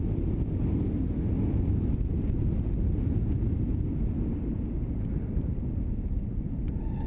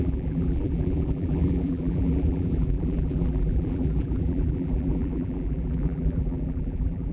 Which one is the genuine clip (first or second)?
first